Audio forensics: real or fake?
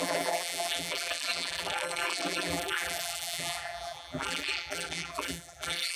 fake